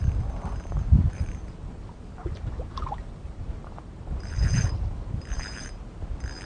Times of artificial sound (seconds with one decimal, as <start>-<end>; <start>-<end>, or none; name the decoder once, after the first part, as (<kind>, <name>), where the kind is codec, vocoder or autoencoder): 0.7-1.8 (vocoder, BigVGAN v2); 2.2-6.0